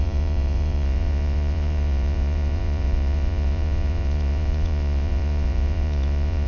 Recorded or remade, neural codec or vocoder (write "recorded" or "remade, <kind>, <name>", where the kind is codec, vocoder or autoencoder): remade, vocoder, Vocos